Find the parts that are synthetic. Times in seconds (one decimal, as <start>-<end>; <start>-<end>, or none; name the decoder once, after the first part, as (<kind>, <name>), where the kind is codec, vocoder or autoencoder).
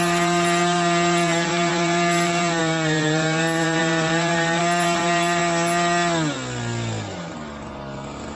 0.0-5.4 (vocoder, BigVGAN v2)